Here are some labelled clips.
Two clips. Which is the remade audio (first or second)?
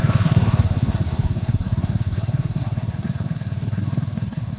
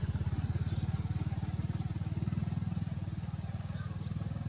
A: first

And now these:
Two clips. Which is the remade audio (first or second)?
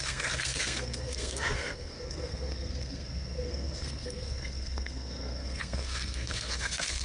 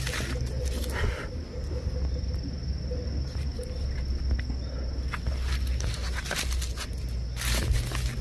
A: first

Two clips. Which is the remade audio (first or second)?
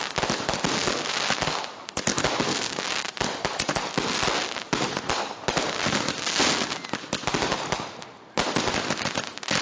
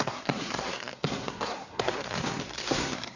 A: second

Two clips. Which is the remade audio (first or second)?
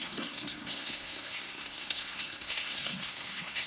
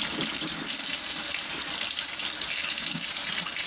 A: first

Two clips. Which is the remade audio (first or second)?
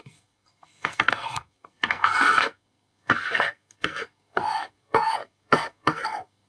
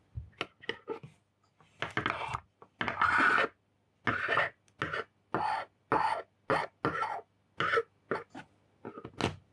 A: first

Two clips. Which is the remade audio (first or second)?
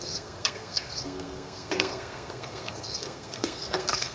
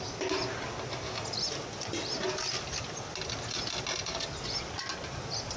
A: first